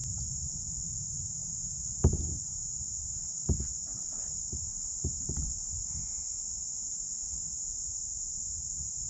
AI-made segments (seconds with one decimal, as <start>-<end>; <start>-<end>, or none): 0.0-0.8; 3.9-6.0